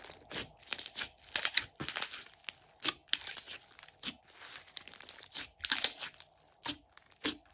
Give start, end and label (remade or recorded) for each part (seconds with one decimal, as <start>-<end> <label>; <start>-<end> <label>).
0.0-7.5 recorded